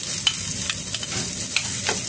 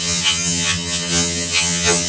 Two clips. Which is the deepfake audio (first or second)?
second